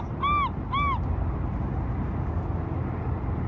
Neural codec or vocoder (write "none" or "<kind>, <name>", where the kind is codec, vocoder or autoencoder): none